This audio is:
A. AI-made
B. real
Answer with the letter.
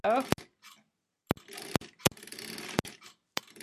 B